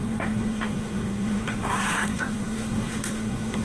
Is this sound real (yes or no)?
no